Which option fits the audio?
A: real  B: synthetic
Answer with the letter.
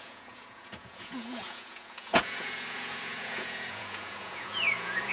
B